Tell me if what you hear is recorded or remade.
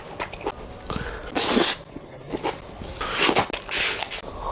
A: recorded